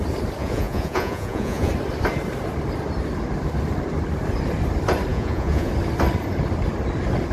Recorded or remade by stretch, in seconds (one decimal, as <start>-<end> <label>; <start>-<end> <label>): 0.0-0.4 recorded; 0.4-1.7 remade; 1.7-5.1 recorded; 5.1-5.7 remade; 5.7-7.3 recorded